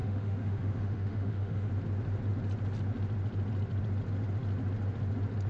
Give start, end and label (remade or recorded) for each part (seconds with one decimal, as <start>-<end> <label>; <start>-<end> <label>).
0.0-1.7 remade; 1.7-5.5 recorded